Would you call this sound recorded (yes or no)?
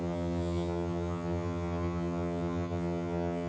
no